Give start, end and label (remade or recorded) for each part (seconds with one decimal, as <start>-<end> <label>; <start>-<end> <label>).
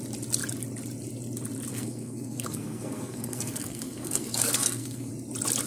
0.0-1.7 recorded; 1.7-5.1 remade; 5.1-5.7 recorded